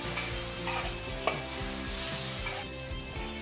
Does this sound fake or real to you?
real